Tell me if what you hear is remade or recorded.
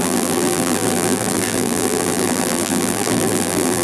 remade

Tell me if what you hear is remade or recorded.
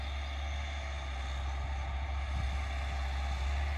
recorded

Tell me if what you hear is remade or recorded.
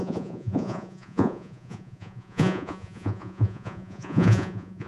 remade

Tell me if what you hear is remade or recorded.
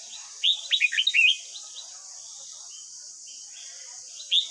recorded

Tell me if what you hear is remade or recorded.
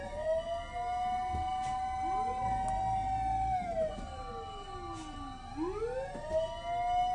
recorded